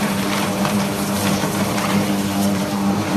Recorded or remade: remade